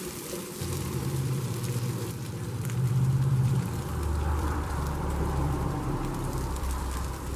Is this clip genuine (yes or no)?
no